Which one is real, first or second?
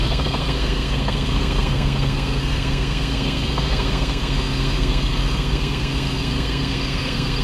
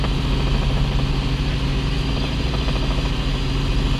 second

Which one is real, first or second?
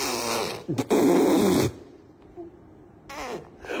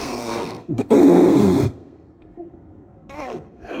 first